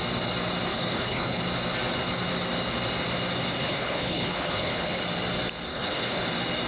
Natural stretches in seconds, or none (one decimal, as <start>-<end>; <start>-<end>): 0.0-0.7; 1.4-3.6; 5.0-5.7; 6.3-6.7